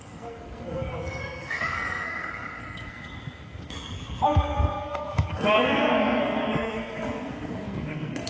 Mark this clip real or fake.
fake